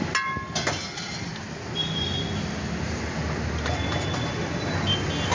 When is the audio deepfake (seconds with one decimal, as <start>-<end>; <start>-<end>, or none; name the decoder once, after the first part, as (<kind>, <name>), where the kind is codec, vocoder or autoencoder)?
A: none